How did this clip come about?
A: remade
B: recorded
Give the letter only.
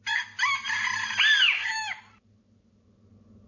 B